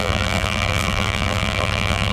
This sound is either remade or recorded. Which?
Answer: remade